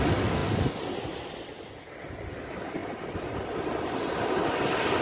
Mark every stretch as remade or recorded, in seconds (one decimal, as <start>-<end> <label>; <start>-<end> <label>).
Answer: 0.0-5.0 recorded